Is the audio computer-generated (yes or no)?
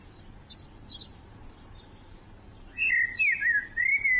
no